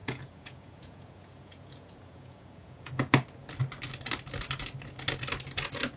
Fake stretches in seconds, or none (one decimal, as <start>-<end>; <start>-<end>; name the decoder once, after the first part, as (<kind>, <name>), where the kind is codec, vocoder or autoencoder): 0.0-2.9 (vocoder, Vocos)